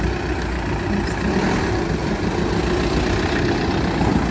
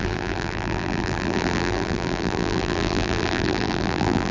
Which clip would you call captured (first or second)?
first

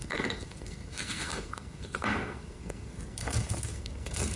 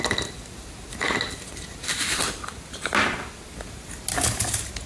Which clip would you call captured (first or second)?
second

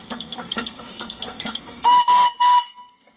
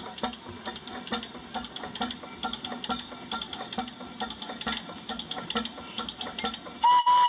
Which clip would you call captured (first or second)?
second